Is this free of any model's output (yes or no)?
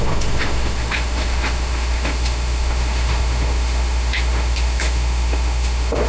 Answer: no